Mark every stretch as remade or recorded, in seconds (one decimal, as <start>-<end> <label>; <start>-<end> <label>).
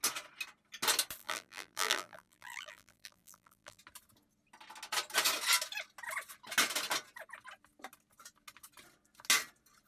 0.0-1.2 recorded; 1.2-3.8 remade; 3.8-9.9 recorded